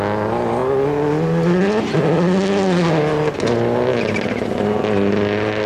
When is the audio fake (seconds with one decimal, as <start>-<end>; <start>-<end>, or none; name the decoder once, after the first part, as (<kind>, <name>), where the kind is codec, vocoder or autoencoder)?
none